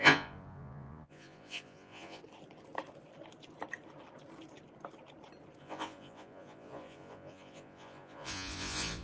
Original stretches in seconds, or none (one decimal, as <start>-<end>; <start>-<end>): 2.2-5.6